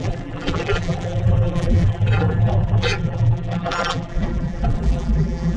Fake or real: fake